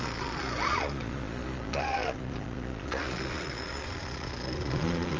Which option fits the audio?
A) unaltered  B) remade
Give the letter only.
B